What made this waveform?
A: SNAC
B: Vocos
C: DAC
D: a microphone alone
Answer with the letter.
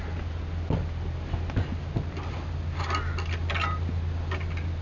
D